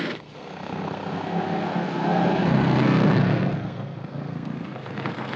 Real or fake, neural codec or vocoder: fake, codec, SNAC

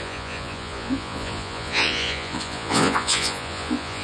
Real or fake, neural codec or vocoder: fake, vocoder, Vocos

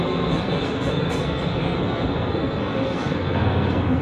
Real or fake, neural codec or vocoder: fake, codec, SNAC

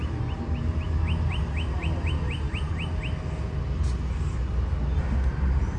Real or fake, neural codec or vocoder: real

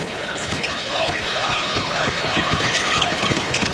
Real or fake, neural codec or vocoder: fake, codec, HILCodec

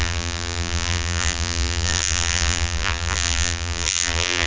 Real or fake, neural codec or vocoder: fake, vocoder, BigVGAN v2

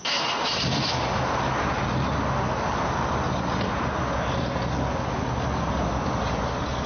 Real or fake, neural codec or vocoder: real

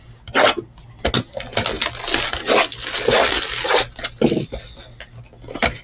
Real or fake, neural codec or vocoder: real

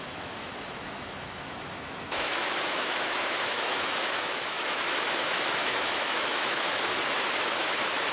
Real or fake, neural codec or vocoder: fake, autoencoder, DAC-VAE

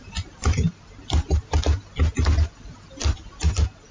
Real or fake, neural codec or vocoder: real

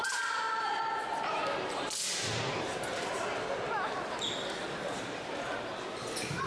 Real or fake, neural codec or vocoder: fake, vocoder, BigVGAN v2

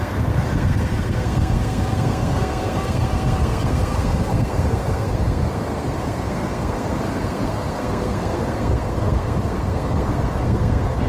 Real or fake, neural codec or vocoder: fake, codec, SNAC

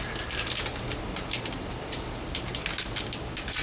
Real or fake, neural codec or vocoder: real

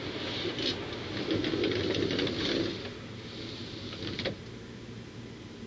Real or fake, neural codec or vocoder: real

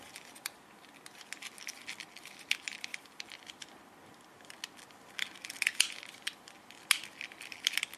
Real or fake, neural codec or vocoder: real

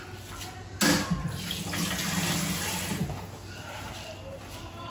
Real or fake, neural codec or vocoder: real